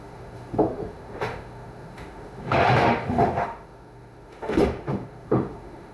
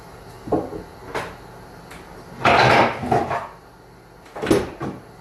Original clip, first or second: second